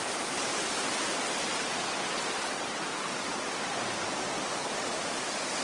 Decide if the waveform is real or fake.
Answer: real